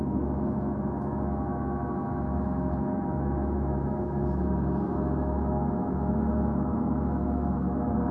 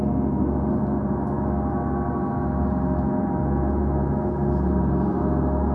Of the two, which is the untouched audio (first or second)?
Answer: second